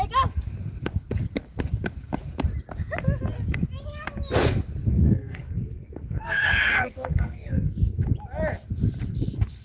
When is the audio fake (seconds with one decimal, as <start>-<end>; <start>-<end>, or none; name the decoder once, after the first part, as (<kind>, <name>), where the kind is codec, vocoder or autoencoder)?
4.9-8.0 (codec, SNAC)